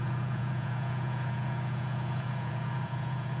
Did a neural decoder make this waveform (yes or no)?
yes